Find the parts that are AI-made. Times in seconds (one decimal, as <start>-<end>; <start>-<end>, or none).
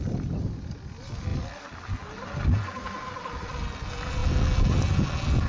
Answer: 0.0-1.3; 3.3-4.2